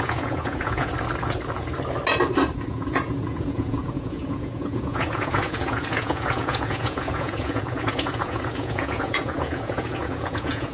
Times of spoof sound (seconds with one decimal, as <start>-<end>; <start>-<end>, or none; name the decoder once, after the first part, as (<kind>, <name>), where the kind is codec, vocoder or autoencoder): 0.0-0.9 (vocoder, Vocos); 2.7-10.7